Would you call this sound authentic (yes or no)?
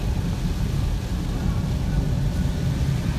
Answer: yes